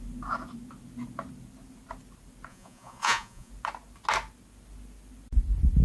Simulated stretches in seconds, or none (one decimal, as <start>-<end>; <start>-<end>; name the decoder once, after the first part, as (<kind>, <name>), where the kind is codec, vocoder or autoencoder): 2.5-3.5 (vocoder, Vocos)